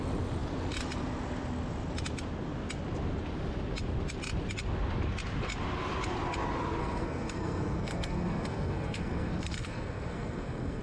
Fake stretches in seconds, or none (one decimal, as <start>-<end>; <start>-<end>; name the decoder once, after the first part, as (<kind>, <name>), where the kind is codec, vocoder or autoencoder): 6.8-10.8 (codec, SNAC)